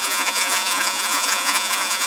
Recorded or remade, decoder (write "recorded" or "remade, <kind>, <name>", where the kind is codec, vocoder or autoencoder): remade, vocoder, Vocos